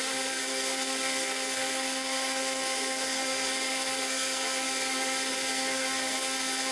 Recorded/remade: remade